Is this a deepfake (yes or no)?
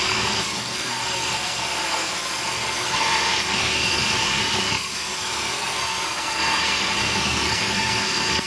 yes